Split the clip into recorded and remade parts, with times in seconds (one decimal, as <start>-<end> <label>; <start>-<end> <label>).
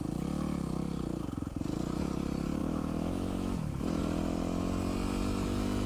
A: 0.0-2.6 recorded; 2.6-4.0 remade; 4.0-5.9 recorded